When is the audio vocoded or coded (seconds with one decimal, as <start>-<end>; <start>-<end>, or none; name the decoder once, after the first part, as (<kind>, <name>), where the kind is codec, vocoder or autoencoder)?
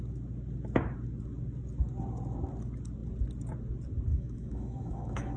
4.1-5.4 (autoencoder, DAC-VAE)